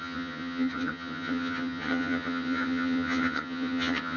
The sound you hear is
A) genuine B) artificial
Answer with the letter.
B